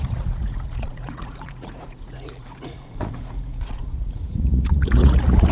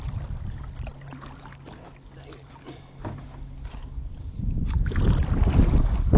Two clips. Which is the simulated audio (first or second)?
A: first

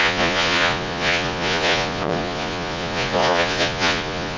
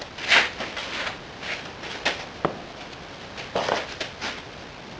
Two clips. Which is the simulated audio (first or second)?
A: first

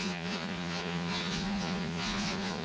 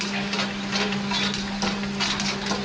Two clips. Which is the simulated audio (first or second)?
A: first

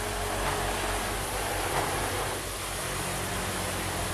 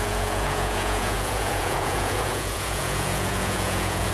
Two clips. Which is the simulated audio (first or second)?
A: second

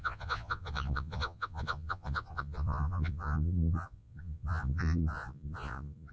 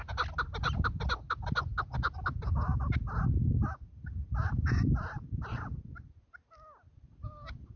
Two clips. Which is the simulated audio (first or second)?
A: first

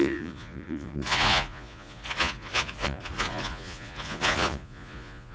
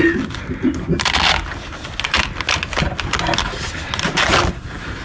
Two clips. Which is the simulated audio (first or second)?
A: first